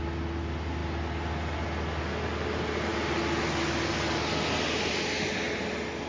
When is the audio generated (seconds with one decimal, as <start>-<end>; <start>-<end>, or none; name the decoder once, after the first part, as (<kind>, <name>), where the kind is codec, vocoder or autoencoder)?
none